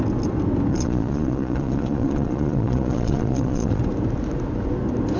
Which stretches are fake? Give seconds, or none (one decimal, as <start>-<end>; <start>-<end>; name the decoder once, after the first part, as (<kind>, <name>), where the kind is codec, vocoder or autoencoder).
0.7-3.8 (vocoder, Vocos)